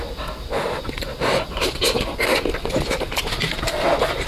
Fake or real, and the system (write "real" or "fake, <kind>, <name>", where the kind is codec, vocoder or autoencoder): real